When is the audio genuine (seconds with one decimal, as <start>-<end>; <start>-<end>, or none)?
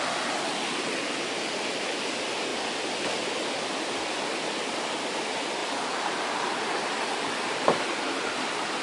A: 0.0-8.8